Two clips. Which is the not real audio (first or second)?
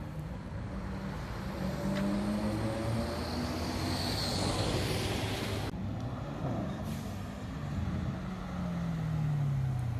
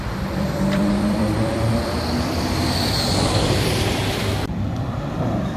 second